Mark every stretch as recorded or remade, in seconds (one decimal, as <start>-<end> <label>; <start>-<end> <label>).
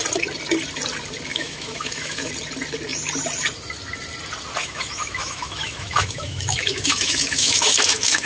0.0-1.3 recorded; 1.3-2.3 remade; 2.3-4.6 recorded; 4.6-8.3 remade